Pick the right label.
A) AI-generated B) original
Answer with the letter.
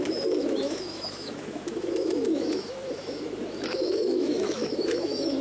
A